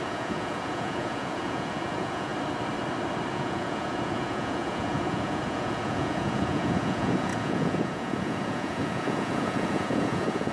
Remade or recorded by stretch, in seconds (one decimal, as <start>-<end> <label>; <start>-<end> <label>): 0.0-2.3 remade; 2.3-3.3 recorded; 3.3-10.5 remade